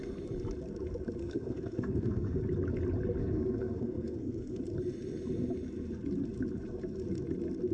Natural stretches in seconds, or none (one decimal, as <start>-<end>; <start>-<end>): 0.0-1.2; 2.4-3.2; 4.6-7.7